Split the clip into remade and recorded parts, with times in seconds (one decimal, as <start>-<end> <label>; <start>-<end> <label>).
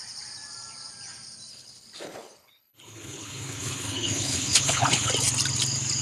0.0-1.5 recorded; 1.5-5.1 remade; 5.1-6.0 recorded